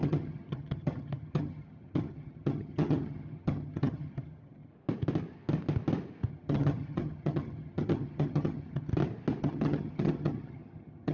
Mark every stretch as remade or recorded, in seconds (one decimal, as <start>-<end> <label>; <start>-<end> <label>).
0.0-4.7 remade; 4.7-6.3 recorded; 6.3-8.9 remade; 8.9-9.4 recorded; 9.4-11.1 remade